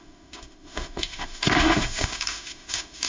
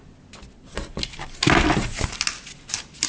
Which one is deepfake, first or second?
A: first